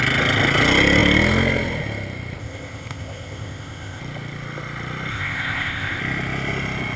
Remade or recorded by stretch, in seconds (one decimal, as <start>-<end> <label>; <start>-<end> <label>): 0.0-2.4 recorded; 2.4-4.0 remade; 4.0-5.1 recorded; 5.1-6.0 remade; 6.0-7.0 recorded

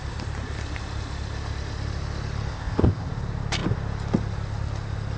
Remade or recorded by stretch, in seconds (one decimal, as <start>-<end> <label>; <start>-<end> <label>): 0.0-2.5 recorded; 2.5-3.1 remade; 3.1-5.2 recorded

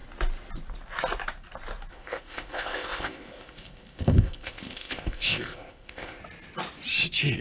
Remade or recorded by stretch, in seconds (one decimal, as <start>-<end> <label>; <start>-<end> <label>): 0.0-1.9 recorded; 1.9-6.2 remade; 6.2-7.4 recorded